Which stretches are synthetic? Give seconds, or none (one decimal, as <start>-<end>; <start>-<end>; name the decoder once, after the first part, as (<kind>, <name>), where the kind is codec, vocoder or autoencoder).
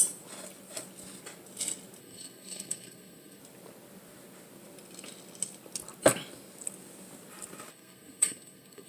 2.0-3.4 (codec, SNAC); 7.7-8.9